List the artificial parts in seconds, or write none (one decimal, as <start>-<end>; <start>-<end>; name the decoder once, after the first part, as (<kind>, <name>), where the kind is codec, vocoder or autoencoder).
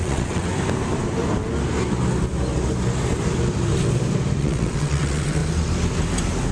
0.0-0.5 (vocoder, WaveNeXt); 4.4-5.4